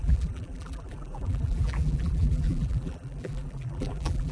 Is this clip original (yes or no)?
no